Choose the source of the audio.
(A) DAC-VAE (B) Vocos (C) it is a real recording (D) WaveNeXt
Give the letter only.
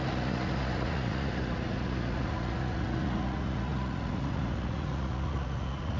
B